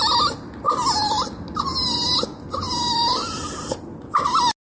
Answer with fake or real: real